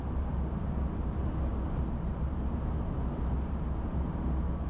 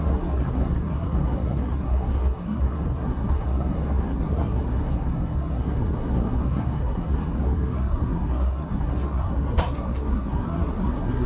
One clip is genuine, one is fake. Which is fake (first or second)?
second